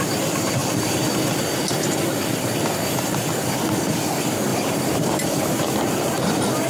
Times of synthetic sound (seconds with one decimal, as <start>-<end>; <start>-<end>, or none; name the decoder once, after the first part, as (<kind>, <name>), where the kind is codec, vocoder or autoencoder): 4.5-6.7 (vocoder, BigVGAN v2)